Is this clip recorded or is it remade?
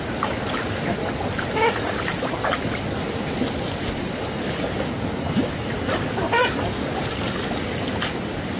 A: recorded